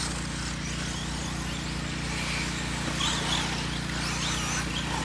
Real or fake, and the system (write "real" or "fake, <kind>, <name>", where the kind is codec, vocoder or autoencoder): real